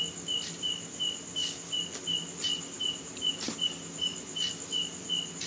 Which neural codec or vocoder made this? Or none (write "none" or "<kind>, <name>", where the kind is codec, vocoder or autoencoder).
none